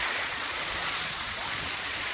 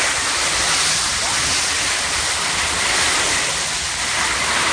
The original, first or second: second